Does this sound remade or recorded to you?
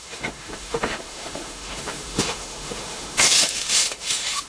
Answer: remade